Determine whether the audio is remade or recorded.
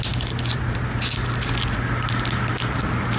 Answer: recorded